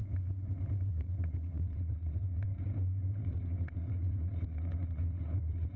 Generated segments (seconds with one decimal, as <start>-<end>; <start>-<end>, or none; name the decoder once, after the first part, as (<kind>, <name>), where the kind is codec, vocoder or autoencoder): 0.9-2.5 (vocoder, WaveNeXt); 3.1-5.8

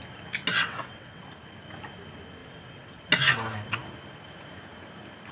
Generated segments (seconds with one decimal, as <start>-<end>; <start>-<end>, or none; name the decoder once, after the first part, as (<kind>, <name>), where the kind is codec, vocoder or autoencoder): 0.6-1.2 (vocoder, WaveNeXt); 2.4-3.0

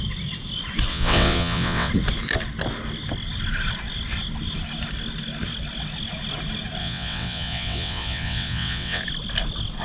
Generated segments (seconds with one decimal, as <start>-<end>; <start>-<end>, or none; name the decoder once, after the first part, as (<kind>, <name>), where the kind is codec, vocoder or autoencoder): 0.9-1.9 (vocoder, WaveNeXt); 6.8-9.0

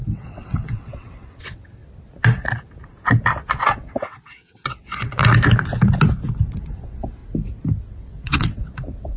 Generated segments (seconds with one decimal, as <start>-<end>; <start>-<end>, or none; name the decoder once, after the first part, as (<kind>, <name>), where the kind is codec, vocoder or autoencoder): 0.0-1.8 (vocoder, WaveNeXt); 3.5-5.2; 6.6-7.2; 7.8-9.2